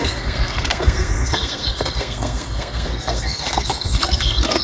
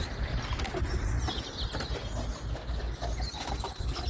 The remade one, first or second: first